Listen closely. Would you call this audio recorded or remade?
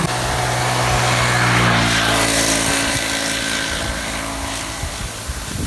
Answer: recorded